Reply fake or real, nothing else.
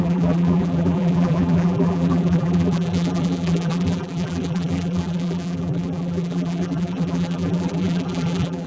fake